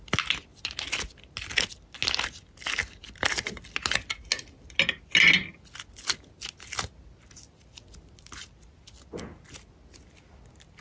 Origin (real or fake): real